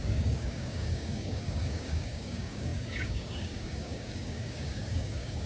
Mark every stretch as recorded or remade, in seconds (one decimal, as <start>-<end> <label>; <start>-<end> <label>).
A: 0.0-5.5 remade